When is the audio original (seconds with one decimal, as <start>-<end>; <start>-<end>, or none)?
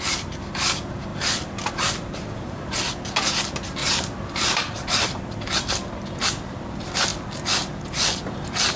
0.0-1.1; 2.9-3.8; 5.2-8.8